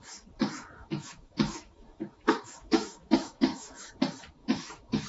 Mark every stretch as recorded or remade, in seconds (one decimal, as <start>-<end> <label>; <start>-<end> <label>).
0.0-0.8 recorded; 0.8-3.9 remade; 3.9-4.4 recorded; 4.4-5.1 remade